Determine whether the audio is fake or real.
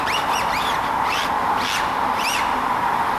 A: real